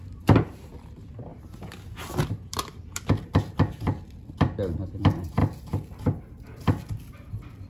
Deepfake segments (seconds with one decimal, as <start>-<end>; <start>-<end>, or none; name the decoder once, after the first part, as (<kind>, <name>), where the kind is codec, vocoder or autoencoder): 0.0-1.3 (vocoder, BigVGAN v2); 2.3-7.7